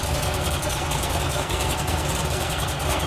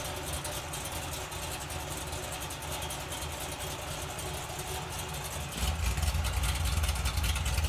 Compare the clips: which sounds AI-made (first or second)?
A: first